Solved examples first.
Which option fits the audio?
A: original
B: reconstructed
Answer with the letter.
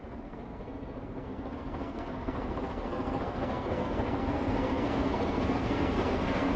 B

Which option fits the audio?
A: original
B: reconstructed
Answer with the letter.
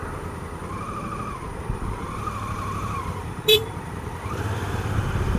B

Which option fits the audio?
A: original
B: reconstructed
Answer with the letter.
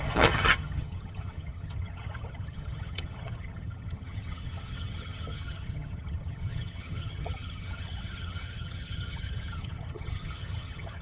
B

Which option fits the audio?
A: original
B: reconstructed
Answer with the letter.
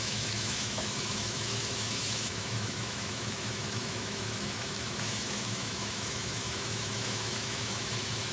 B